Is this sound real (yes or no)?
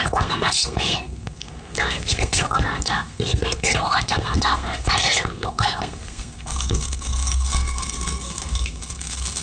no